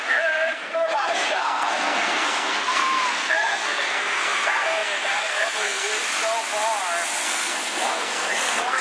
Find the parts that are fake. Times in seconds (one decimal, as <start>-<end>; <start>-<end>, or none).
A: 0.0-5.9; 7.2-8.8

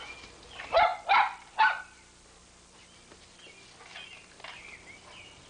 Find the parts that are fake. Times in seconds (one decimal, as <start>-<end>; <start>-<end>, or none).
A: none

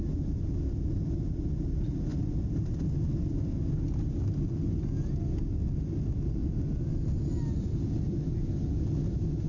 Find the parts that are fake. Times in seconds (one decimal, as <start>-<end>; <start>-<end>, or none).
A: none

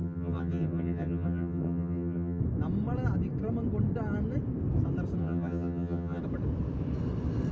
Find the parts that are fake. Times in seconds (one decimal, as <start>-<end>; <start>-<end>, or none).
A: 0.0-2.4; 5.2-6.2